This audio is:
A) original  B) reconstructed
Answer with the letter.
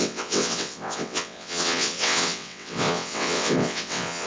B